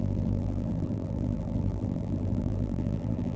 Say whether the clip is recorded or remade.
remade